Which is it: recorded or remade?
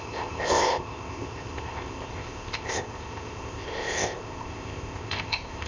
remade